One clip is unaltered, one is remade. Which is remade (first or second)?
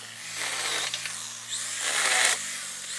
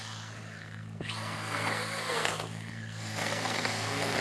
second